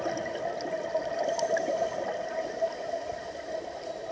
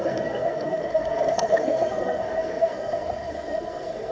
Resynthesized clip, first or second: second